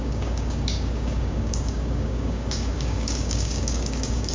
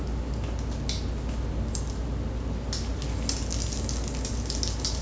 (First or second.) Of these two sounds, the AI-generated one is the first